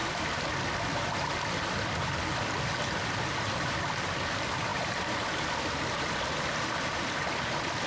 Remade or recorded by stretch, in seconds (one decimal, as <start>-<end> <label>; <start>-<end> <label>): 0.0-4.0 recorded; 4.0-7.9 remade